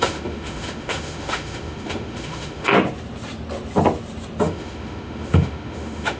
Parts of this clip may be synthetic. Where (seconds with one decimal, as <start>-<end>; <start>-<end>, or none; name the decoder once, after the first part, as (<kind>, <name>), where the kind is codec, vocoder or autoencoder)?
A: 0.0-2.7 (autoencoder, DAC-VAE); 4.4-6.2